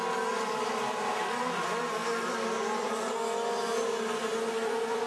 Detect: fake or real real